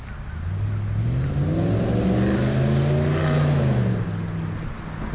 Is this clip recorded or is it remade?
recorded